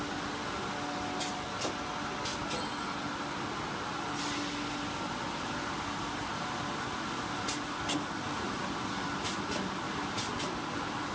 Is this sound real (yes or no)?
yes